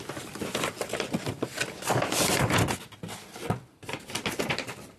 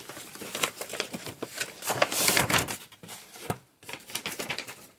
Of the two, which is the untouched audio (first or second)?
first